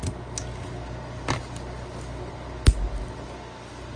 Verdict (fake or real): real